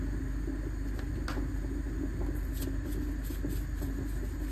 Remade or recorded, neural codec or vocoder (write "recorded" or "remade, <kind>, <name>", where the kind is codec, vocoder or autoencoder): recorded